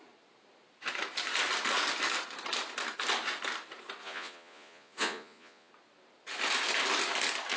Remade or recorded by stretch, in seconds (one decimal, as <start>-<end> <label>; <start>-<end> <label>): 0.0-4.0 recorded; 4.0-5.7 remade; 5.7-7.6 recorded